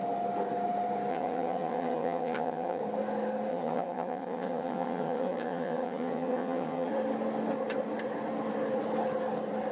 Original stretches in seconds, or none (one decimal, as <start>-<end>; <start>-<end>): 0.0-1.1; 2.8-3.5; 6.9-9.7